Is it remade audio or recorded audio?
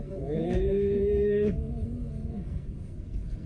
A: remade